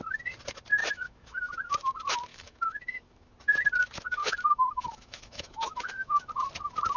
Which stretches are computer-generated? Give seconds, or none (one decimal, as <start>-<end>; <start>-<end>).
0.8-1.5; 2.3-3.3; 4.2-6.5